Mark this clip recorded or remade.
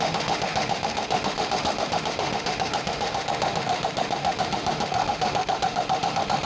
remade